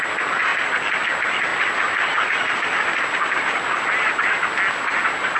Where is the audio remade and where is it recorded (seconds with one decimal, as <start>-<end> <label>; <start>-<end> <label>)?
0.0-5.4 recorded